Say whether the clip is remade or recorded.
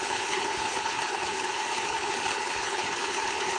remade